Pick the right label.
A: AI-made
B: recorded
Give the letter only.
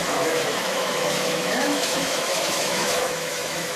A